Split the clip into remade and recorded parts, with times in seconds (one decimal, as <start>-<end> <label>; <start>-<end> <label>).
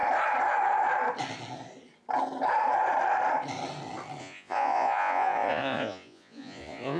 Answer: 0.0-4.2 recorded; 4.2-7.0 remade